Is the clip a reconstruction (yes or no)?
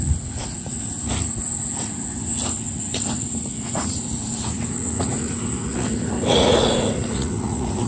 yes